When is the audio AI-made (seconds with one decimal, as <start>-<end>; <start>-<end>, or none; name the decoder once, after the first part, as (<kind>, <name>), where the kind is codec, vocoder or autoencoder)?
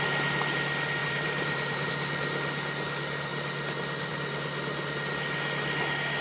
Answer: 1.0-1.9 (vocoder, BigVGAN v2)